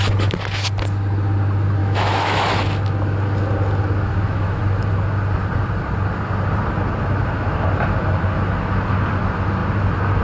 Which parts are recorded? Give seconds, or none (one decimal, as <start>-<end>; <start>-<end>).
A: 0.0-1.8; 2.5-4.1; 4.6-10.2